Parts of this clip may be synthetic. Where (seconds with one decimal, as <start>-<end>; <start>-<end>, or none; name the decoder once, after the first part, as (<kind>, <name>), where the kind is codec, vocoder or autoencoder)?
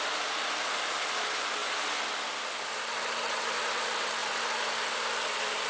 none